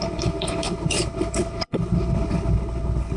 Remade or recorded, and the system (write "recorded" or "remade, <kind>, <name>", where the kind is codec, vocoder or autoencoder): remade, codec, HILCodec